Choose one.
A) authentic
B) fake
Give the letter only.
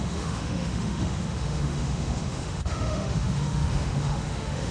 B